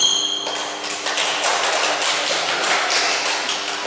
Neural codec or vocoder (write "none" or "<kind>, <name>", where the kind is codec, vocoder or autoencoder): none